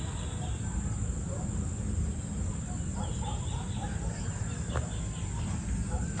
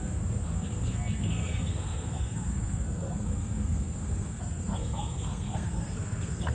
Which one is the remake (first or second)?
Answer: second